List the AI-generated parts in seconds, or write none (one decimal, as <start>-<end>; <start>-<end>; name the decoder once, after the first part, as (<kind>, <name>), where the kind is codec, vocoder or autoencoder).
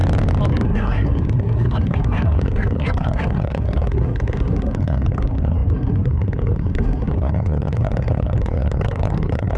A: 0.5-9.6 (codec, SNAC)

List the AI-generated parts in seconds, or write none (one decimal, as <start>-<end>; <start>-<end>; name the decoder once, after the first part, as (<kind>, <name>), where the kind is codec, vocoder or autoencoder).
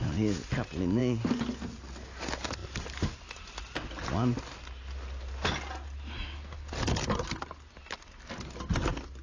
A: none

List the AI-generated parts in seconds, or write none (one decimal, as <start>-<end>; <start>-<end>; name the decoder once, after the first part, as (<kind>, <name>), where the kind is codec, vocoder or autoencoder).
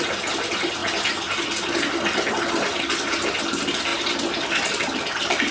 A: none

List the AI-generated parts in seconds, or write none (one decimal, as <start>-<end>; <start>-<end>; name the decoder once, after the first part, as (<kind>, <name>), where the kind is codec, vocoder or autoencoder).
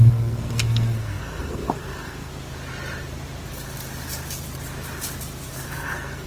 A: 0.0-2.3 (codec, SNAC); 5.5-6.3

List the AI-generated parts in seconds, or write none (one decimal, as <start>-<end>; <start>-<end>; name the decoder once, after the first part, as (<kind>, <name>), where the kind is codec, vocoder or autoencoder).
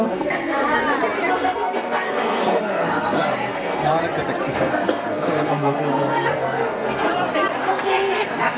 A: 0.0-0.7 (codec, SNAC); 1.3-3.9; 4.5-7.1; 7.6-8.6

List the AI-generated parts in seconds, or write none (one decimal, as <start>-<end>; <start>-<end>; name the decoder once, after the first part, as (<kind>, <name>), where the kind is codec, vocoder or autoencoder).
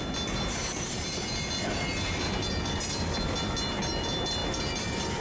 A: none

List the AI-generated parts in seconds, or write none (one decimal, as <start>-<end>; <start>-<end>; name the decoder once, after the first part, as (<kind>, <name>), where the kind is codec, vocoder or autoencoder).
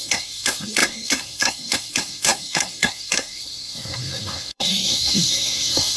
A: 0.0-6.0 (codec, SNAC)